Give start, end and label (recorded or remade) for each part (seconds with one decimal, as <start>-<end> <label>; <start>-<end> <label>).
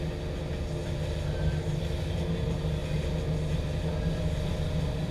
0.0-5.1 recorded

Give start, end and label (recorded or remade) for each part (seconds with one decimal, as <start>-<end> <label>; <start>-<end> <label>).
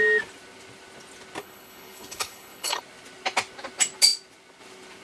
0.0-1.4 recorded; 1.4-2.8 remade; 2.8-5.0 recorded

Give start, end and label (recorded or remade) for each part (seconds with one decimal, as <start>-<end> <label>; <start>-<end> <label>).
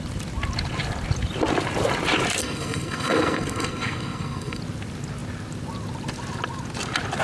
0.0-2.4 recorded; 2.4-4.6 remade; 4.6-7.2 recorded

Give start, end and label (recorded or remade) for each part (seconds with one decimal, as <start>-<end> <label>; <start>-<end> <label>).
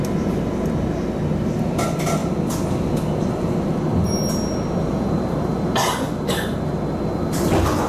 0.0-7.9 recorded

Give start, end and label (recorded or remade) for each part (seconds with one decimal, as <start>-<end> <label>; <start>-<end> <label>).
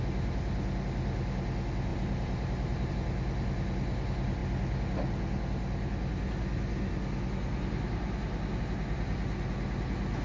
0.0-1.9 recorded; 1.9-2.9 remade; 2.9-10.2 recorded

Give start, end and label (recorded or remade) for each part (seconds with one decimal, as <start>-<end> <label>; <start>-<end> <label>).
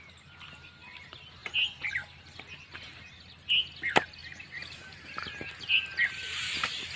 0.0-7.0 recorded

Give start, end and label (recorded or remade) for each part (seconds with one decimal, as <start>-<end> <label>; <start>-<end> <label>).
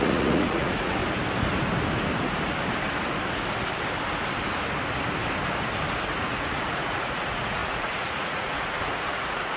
0.0-1.0 remade; 1.0-6.2 recorded; 6.2-9.6 remade